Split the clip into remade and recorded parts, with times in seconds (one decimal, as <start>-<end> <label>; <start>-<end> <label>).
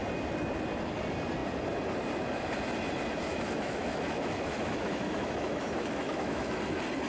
0.0-3.3 recorded; 3.3-6.6 remade; 6.6-7.1 recorded